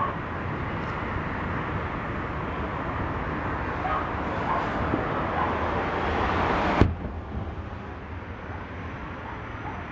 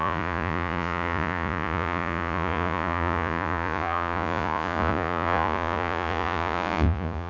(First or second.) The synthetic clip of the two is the second